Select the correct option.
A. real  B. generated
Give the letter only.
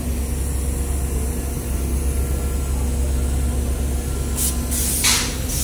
A